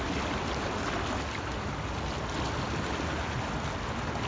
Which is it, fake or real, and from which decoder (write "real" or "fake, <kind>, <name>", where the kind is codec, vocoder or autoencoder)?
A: real